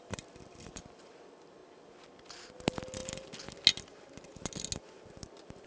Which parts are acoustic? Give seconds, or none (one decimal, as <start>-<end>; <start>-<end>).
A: 0.0-5.7